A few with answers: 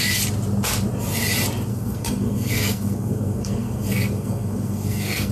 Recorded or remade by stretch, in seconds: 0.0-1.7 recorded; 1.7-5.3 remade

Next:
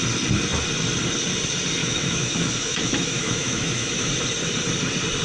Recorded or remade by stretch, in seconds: 0.0-1.8 recorded; 1.8-4.1 remade; 4.1-5.2 recorded

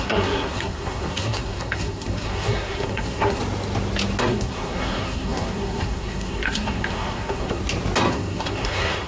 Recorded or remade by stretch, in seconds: 0.0-3.4 remade; 3.4-4.2 recorded; 4.2-7.6 remade; 7.6-8.1 recorded; 8.1-9.1 remade

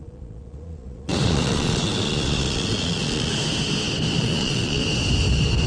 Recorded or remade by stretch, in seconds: 0.0-3.3 remade; 3.3-4.2 recorded; 4.2-4.8 remade; 4.8-5.7 recorded

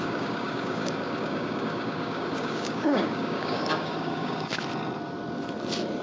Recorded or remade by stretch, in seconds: 0.0-4.6 remade; 4.6-6.0 recorded